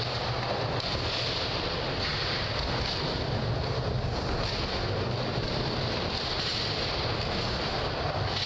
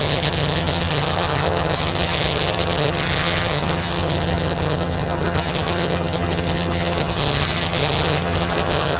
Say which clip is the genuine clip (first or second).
first